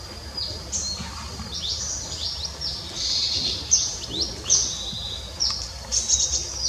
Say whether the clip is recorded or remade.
recorded